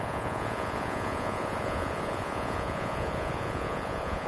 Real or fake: fake